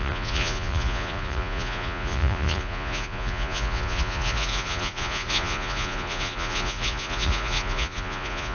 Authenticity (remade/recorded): remade